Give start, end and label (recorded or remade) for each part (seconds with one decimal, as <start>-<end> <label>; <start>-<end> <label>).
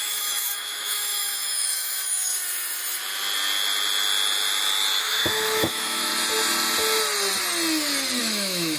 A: 0.0-2.3 remade; 2.3-5.0 recorded; 5.0-6.1 remade; 6.1-8.2 recorded; 8.2-8.8 remade